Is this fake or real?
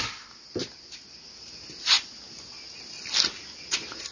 real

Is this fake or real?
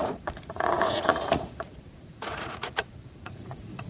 fake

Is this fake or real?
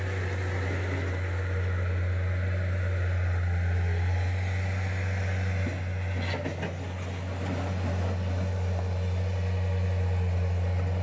real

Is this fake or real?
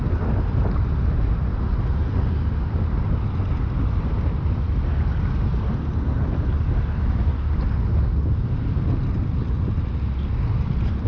real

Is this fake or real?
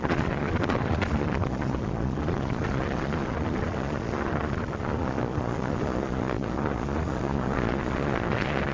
fake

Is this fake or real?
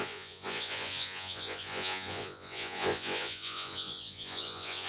fake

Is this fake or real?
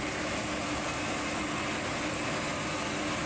real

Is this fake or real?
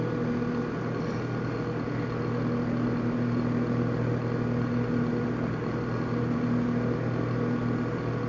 real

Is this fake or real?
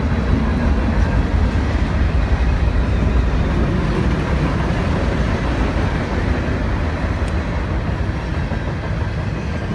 real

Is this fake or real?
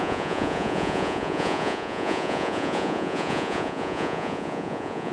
fake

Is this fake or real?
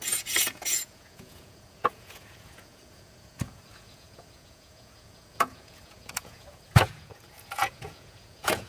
fake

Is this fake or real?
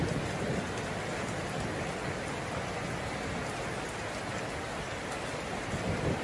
real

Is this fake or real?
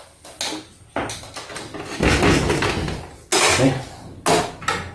real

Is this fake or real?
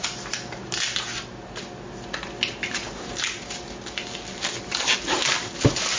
real